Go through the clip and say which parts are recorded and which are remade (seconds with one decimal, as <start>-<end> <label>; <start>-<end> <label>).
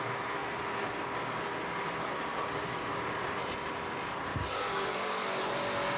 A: 0.0-2.3 recorded; 2.3-3.0 remade; 3.0-4.3 recorded; 4.3-5.5 remade; 5.5-6.0 recorded